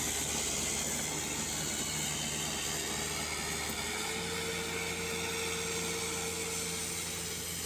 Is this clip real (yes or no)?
yes